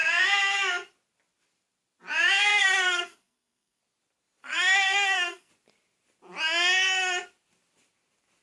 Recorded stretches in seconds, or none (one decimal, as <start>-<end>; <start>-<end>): 0.0-2.5; 3.8-4.4; 5.5-8.4